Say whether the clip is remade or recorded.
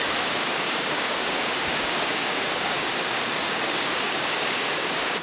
remade